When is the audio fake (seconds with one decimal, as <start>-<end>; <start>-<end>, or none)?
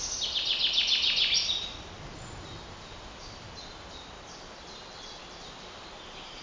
none